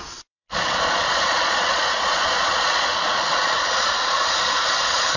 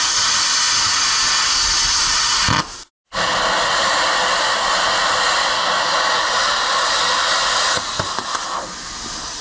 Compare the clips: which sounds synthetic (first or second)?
first